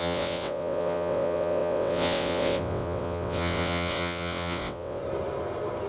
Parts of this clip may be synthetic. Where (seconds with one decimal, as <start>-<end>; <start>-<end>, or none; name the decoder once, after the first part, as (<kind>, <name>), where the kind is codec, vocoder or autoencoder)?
0.0-5.0 (vocoder, WaveNeXt)